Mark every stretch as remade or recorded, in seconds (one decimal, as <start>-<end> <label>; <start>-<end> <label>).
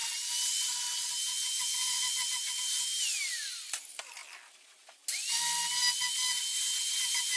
0.0-7.4 recorded